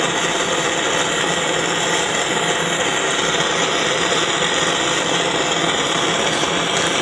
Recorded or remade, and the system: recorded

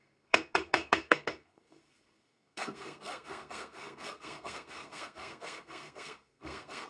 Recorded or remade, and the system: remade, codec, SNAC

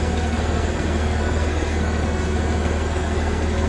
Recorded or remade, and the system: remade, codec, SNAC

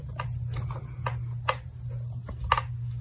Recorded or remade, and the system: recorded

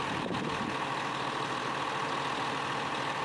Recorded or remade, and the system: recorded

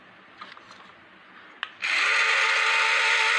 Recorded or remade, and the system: recorded